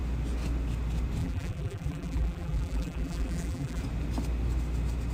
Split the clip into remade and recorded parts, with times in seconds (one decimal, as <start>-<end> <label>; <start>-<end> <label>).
0.0-1.2 recorded; 1.2-3.8 remade; 3.8-5.1 recorded